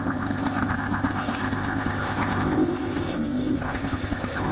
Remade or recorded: remade